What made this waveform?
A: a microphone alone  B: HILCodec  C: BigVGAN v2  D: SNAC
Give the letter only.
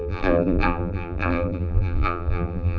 C